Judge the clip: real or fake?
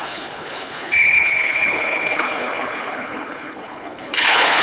fake